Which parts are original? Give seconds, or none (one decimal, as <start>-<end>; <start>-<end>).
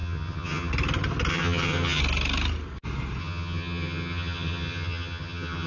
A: 0.7-1.3; 2.0-3.2